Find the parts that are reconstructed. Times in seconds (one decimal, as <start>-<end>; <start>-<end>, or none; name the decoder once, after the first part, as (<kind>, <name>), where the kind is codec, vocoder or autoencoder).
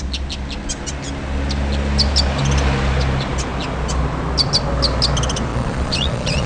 5.5-6.5 (vocoder, Vocos)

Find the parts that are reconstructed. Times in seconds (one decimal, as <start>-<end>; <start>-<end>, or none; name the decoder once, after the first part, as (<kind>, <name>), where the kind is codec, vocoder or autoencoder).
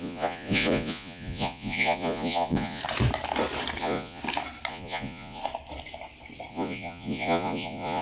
0.0-2.8 (vocoder, Vocos); 3.8-4.2; 4.7-5.4; 6.5-8.0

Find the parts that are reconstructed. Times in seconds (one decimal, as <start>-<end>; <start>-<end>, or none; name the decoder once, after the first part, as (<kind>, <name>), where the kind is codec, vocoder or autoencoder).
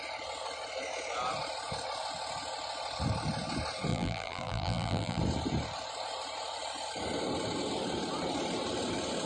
3.9-5.2 (vocoder, BigVGAN v2)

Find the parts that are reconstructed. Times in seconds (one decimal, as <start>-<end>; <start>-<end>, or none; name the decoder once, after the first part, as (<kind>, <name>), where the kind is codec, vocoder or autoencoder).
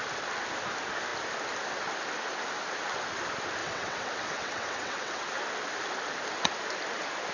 3.6-5.2 (vocoder, WaveNeXt)